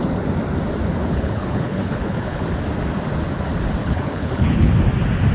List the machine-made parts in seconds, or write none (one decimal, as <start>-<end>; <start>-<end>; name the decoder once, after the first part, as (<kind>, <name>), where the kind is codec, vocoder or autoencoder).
1.0-2.4 (codec, HILCodec); 3.8-4.7